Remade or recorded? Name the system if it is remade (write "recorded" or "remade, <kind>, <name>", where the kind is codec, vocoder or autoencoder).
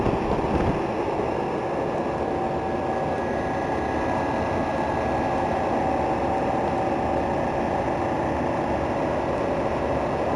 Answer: recorded